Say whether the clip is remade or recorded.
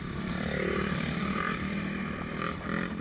remade